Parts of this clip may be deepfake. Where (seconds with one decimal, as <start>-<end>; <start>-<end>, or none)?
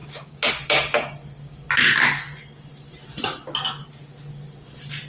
0.0-0.5